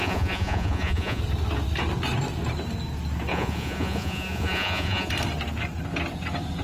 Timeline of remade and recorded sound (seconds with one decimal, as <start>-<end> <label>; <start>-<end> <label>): 0.0-1.2 remade; 1.2-3.3 recorded; 3.3-5.1 remade; 5.1-6.6 recorded

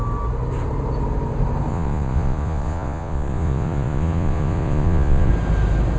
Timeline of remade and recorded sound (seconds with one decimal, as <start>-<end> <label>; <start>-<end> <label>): 0.0-1.7 recorded; 1.7-5.3 remade; 5.3-6.0 recorded

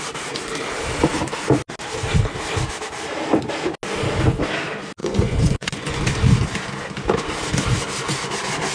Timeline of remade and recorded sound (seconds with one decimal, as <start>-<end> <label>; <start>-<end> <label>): 0.0-5.0 recorded; 5.0-6.0 remade; 6.0-8.7 recorded

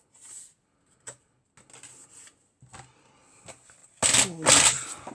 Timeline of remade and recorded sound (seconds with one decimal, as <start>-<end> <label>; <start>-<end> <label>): 0.0-5.1 recorded

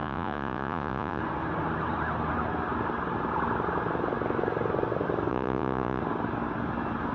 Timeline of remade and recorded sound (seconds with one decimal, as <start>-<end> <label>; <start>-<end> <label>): 0.0-1.2 remade; 1.2-5.3 recorded; 5.3-6.0 remade; 6.0-7.1 recorded

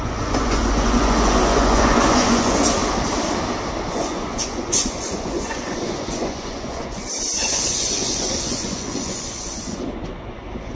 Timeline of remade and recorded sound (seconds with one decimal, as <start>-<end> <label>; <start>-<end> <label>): 0.0-2.8 remade; 2.8-3.9 recorded; 3.9-10.7 remade

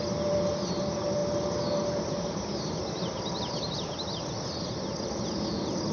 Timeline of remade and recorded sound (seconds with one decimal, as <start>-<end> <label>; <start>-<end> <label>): 0.0-5.9 recorded

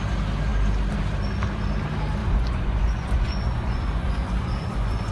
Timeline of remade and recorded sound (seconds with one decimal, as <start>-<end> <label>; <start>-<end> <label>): 0.0-2.2 recorded; 2.2-5.1 remade